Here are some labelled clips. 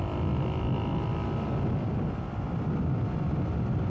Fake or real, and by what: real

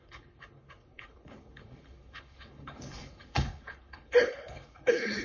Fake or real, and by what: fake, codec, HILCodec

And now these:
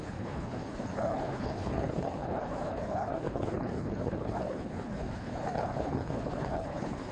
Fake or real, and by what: fake, codec, HILCodec